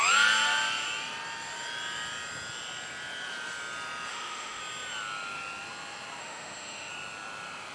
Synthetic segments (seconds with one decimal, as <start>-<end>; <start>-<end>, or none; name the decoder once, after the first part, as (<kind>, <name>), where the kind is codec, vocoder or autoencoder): 4.1-4.6 (autoencoder, DAC-VAE); 6.2-6.9